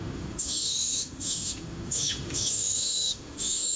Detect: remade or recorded remade